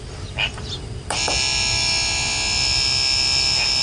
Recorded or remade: recorded